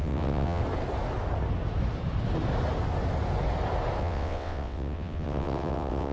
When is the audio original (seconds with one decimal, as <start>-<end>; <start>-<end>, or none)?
0.6-4.0